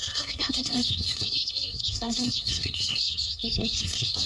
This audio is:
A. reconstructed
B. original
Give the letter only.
A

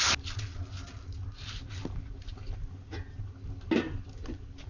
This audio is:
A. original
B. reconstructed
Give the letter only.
A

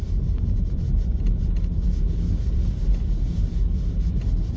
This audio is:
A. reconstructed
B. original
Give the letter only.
B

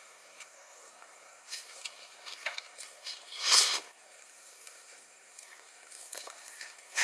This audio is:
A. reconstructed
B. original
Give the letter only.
A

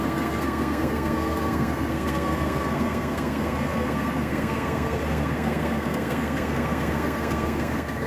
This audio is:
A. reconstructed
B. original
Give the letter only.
A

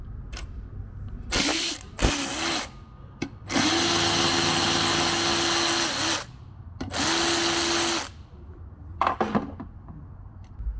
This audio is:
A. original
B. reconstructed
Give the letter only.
A